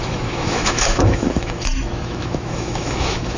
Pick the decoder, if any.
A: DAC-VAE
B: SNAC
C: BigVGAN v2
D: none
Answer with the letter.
A